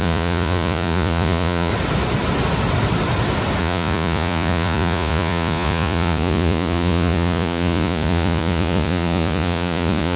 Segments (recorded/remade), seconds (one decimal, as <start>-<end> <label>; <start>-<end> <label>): 0.0-1.7 remade; 1.7-3.6 recorded; 3.6-10.2 remade